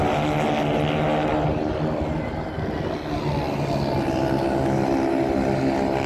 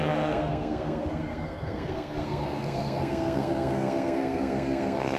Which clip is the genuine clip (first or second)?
first